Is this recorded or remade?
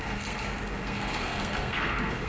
remade